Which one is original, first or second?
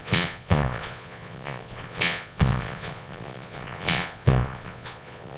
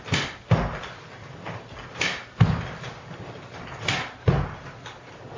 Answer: second